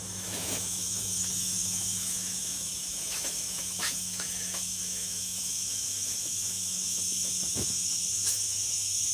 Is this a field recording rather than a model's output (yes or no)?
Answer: no